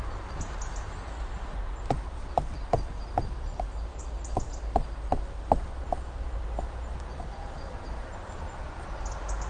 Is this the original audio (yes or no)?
yes